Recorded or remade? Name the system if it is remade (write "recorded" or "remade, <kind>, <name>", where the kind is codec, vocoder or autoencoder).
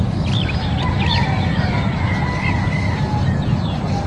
recorded